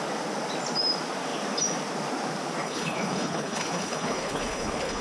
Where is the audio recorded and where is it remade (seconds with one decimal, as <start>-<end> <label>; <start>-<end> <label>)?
0.0-2.6 recorded; 2.6-5.0 remade